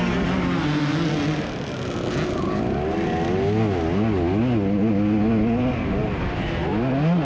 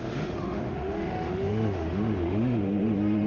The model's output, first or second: second